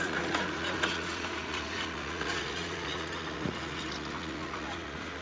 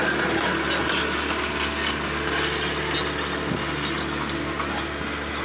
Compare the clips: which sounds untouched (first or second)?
second